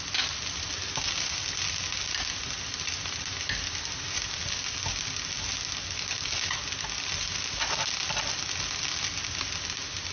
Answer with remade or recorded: recorded